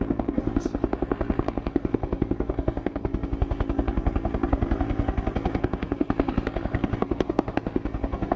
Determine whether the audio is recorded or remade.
remade